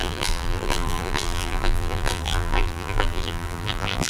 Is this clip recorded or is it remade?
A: remade